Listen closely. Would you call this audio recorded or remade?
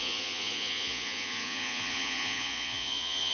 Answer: remade